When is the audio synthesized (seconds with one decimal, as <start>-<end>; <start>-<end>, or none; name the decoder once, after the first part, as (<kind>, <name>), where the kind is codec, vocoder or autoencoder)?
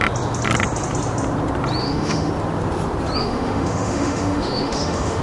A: 1.8-2.3 (autoencoder, DAC-VAE); 3.2-5.2